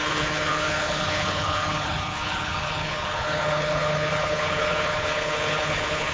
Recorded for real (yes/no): no